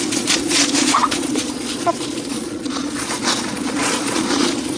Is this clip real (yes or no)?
no